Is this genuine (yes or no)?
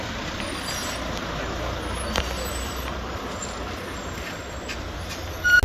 yes